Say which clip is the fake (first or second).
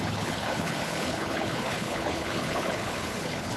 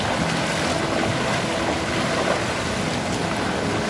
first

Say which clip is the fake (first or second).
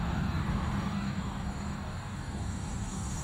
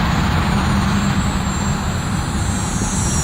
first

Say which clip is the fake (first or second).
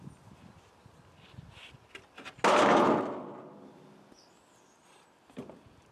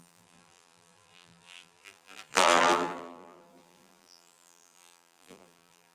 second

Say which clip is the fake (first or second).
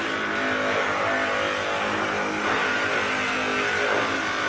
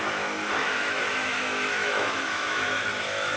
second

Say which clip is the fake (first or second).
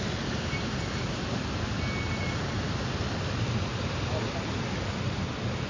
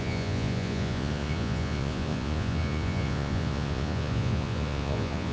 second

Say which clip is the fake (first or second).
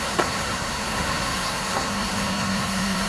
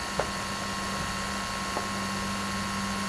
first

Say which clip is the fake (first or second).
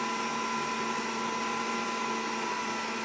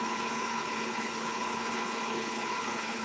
second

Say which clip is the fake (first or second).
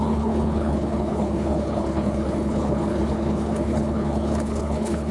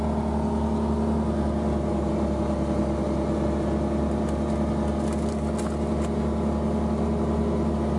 first